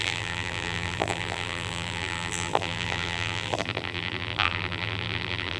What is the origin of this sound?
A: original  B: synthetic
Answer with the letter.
B